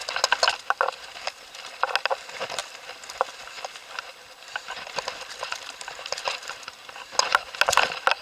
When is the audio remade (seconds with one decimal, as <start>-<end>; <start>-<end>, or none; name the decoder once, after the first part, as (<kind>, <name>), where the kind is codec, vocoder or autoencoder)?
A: none